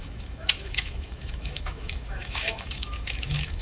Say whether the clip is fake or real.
fake